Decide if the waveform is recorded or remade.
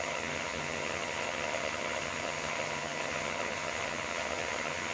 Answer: remade